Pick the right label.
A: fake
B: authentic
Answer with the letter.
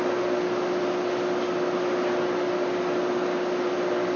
B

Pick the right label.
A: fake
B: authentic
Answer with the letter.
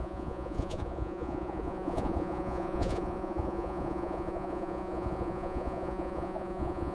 A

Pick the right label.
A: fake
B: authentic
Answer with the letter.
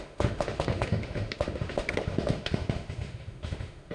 A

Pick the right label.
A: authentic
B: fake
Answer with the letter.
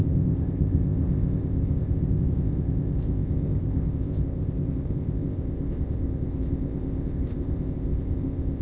B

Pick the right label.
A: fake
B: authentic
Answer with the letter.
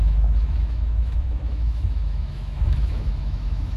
A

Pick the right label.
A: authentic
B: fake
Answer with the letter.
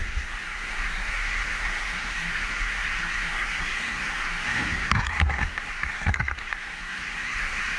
B